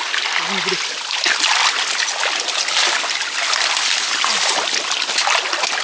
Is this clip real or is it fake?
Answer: real